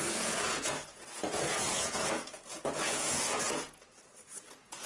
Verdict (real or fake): fake